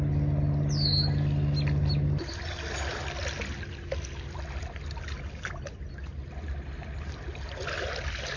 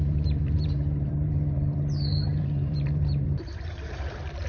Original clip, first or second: first